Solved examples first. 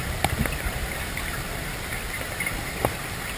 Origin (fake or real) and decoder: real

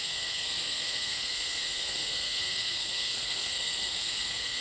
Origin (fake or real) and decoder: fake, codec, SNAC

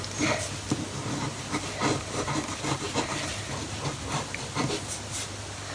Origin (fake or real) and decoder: real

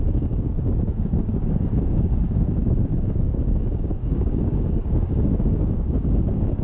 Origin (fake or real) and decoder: fake, codec, DAC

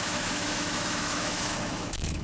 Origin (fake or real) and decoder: fake, autoencoder, DAC-VAE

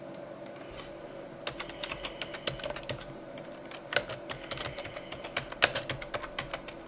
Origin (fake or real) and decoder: real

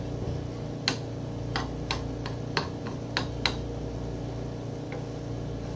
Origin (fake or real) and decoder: real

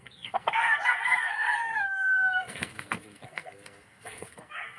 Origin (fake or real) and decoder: fake, codec, SNAC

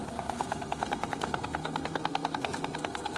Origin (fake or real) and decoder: fake, codec, SNAC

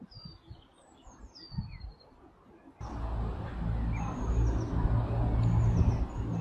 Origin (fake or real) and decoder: real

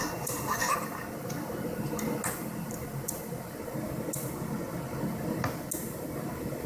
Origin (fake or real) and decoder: real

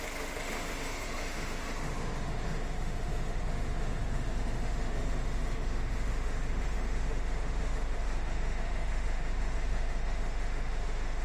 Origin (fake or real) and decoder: fake, autoencoder, DAC-VAE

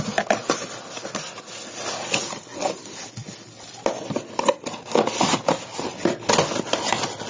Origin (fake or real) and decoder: real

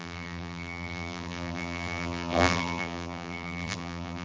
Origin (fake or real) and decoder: fake, vocoder, BigVGAN v2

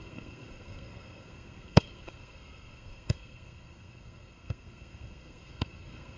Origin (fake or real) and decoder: fake, codec, SNAC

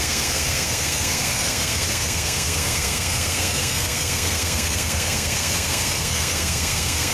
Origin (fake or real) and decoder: fake, codec, SNAC